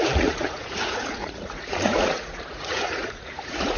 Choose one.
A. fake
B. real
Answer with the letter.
A